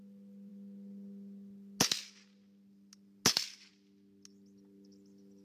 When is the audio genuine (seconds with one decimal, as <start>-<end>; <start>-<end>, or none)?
0.0-5.4